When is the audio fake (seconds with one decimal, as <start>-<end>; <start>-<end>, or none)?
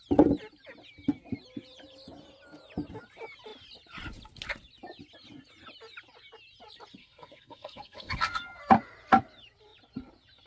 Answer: 7.0-8.6